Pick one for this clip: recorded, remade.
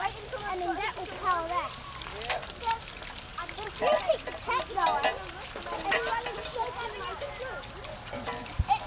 recorded